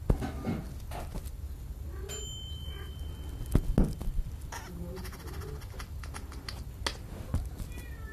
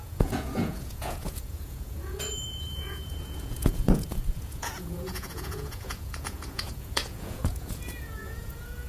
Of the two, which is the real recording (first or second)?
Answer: first